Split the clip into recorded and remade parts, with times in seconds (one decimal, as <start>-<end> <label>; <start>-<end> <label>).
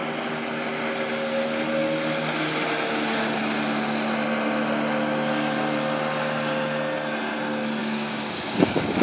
0.0-7.8 recorded; 7.8-9.0 remade